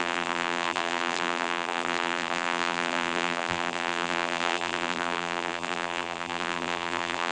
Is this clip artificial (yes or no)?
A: yes